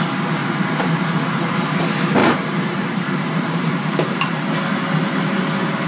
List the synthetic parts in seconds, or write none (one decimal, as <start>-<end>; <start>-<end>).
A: 0.4-1.8; 2.2-4.5